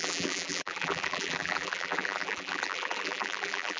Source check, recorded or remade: remade